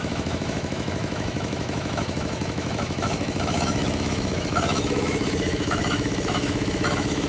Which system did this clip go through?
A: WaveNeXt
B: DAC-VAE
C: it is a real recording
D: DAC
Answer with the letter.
B